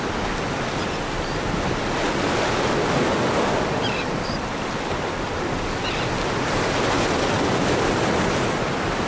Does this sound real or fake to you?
real